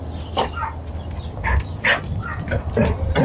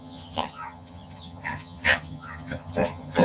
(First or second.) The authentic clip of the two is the first